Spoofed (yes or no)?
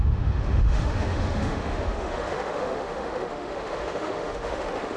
yes